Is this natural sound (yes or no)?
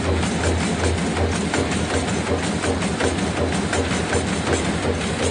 yes